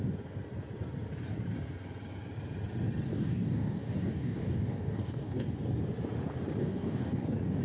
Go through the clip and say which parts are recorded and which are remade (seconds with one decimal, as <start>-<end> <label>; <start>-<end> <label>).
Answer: 0.0-3.1 recorded; 3.1-5.5 remade; 5.5-6.6 recorded; 6.6-7.6 remade